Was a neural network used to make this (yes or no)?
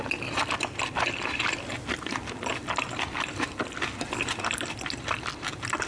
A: no